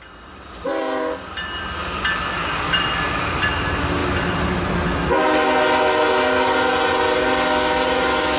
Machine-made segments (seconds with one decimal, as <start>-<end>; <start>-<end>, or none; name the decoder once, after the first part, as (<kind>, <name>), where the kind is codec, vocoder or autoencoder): none